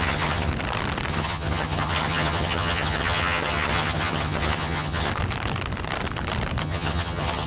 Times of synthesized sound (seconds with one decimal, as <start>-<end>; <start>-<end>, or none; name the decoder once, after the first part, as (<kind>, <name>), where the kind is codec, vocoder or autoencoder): 0.0-0.5 (vocoder, HiFi-GAN); 1.1-5.1; 6.6-7.5